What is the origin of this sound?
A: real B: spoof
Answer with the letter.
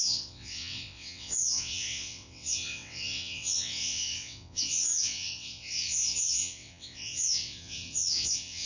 B